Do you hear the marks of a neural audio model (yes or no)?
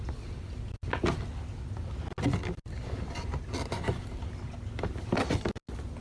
no